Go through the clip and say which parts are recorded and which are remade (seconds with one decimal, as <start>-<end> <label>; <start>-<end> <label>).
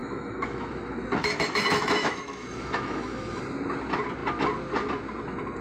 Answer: 0.0-3.4 remade; 3.4-5.6 recorded